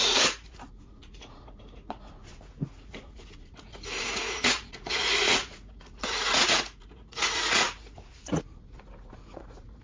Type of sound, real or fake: fake